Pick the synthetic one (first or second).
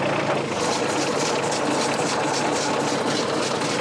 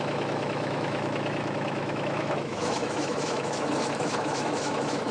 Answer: second